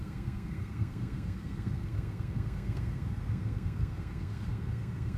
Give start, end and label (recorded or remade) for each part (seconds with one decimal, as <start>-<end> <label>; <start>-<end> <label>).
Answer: 0.0-5.2 remade